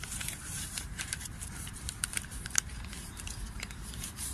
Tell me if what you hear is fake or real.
fake